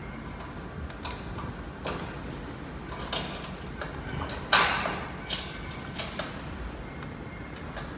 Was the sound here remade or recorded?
recorded